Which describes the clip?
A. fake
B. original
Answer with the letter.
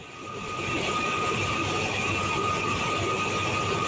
B